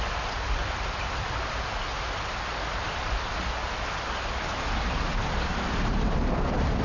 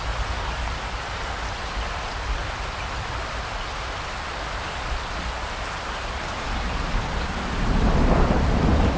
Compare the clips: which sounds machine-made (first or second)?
second